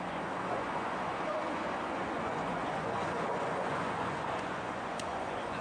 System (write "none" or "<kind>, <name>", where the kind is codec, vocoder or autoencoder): vocoder, Vocos